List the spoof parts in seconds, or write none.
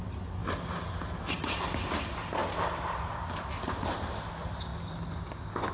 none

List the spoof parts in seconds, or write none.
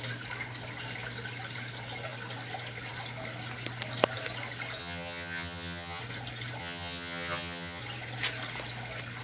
4.8-6.0; 6.6-7.8